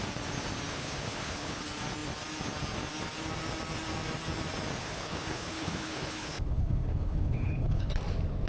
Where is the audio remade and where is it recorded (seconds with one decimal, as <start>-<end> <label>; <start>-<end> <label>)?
0.0-0.7 recorded; 0.7-1.6 remade; 1.6-4.8 recorded; 4.8-7.9 remade; 7.9-8.5 recorded